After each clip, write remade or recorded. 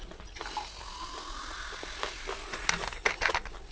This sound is recorded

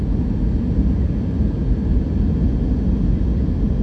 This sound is recorded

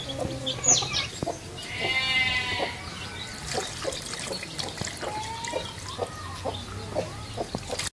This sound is recorded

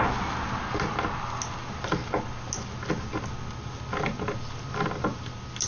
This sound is recorded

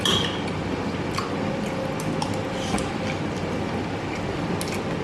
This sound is recorded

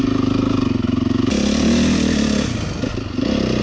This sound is recorded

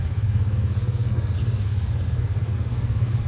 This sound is remade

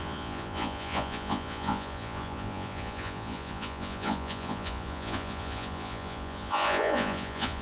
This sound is remade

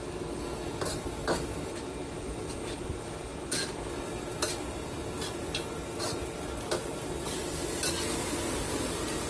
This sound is recorded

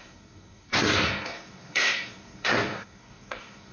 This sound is remade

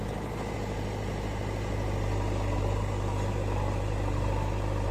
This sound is recorded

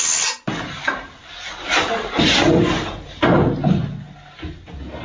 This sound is recorded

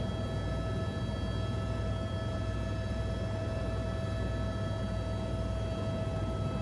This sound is recorded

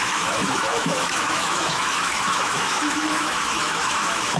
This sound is remade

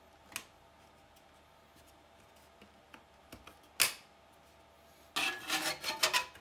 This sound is recorded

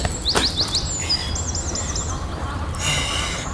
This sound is recorded